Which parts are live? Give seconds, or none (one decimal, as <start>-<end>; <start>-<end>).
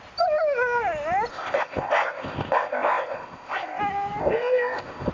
0.0-1.3; 3.8-4.2